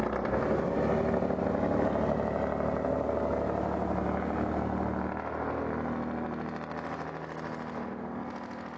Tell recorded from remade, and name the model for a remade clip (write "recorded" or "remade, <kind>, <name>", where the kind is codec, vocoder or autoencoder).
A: recorded